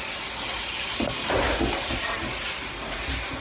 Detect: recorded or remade recorded